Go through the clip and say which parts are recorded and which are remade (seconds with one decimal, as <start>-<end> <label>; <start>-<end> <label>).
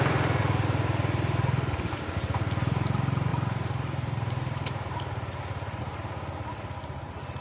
0.0-3.3 recorded; 3.3-5.8 remade; 5.8-7.4 recorded